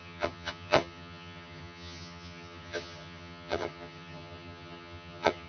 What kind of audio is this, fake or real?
fake